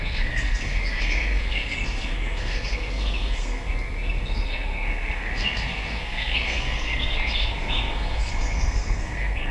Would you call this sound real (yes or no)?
no